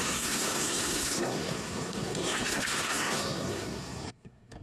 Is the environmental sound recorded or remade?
remade